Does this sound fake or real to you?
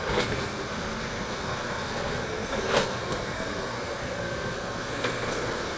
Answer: fake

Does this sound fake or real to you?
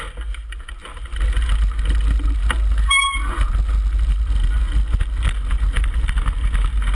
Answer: real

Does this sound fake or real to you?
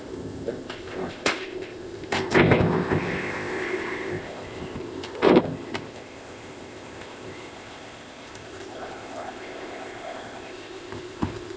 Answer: fake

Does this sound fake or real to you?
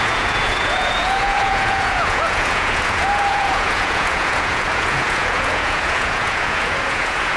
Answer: fake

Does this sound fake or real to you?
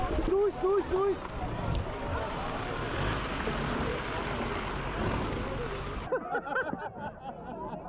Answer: real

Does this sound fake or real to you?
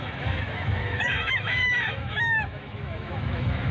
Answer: fake